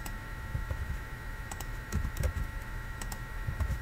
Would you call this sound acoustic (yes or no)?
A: no